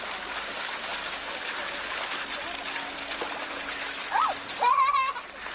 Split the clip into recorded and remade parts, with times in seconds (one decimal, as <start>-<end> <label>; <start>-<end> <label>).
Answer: 0.0-5.5 recorded